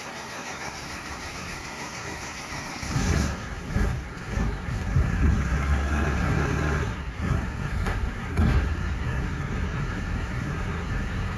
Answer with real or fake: fake